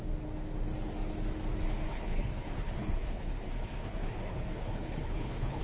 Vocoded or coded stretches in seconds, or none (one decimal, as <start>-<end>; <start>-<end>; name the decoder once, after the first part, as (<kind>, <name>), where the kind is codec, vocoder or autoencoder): 1.9-5.6 (codec, HILCodec)